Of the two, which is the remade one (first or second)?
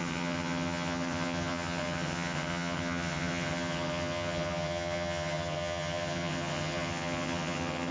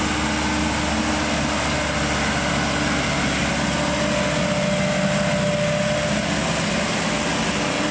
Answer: first